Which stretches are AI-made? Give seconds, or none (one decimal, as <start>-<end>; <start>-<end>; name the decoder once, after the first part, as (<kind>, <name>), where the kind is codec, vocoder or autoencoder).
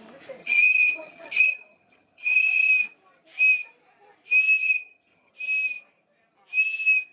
0.4-2.7 (vocoder, HiFi-GAN); 4.6-5.3